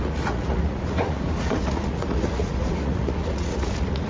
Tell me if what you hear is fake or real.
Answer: fake